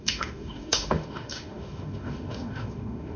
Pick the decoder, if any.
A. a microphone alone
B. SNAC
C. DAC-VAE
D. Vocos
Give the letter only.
C